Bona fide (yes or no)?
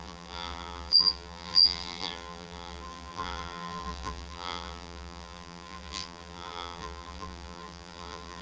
no